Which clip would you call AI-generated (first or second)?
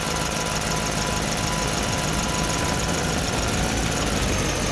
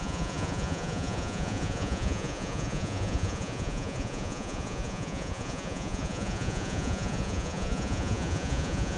second